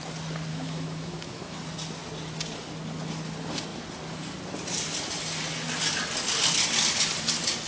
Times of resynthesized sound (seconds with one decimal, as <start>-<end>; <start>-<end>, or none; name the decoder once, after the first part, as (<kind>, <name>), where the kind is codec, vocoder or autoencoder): 0.5-1.6 (autoencoder, DAC-VAE)